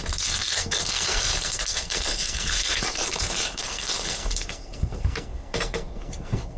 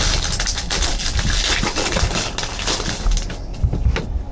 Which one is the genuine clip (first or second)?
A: second